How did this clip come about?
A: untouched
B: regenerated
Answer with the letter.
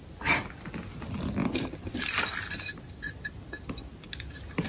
A